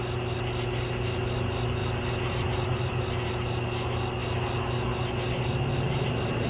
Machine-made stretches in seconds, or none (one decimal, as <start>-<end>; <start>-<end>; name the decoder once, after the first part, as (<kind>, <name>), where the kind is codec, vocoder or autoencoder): none